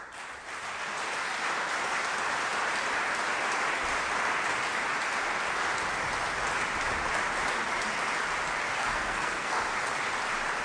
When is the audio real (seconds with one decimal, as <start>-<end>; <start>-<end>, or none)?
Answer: 0.0-8.8; 9.6-10.6